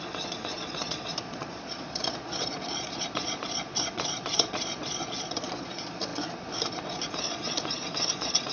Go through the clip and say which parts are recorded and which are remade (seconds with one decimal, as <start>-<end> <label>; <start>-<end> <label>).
0.0-6.1 remade; 6.1-6.8 recorded; 6.8-8.5 remade

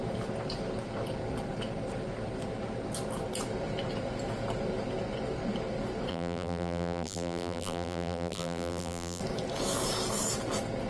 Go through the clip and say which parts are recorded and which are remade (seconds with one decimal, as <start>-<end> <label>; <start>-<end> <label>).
0.0-6.1 recorded; 6.1-9.2 remade; 9.2-10.9 recorded

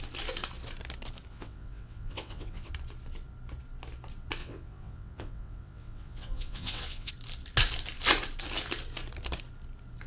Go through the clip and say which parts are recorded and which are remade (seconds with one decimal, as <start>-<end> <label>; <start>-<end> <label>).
0.0-1.3 recorded; 1.3-2.7 remade; 2.7-4.4 recorded; 4.4-7.1 remade; 7.1-10.1 recorded

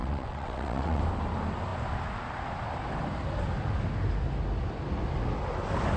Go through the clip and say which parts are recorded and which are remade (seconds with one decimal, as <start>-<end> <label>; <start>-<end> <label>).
0.0-1.0 remade; 1.0-6.0 recorded

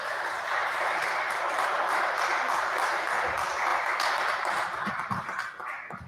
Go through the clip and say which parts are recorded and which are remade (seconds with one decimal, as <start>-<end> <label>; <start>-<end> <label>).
0.0-0.6 recorded; 0.6-2.1 remade; 2.1-3.7 recorded; 3.7-4.9 remade; 4.9-6.1 recorded

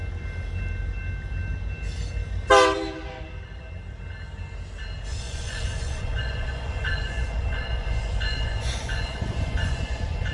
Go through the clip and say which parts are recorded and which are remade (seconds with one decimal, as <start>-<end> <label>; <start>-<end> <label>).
0.0-5.1 recorded; 5.1-10.3 remade

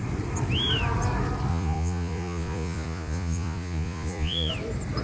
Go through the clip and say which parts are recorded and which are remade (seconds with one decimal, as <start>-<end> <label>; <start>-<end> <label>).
0.0-1.5 recorded; 1.5-4.5 remade; 4.5-5.0 recorded